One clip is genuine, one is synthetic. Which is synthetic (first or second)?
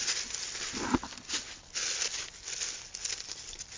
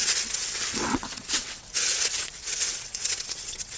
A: second